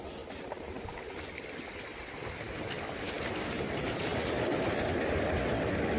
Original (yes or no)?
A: yes